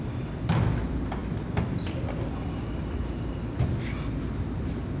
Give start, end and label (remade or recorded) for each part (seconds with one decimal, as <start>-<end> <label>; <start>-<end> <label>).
0.0-5.0 recorded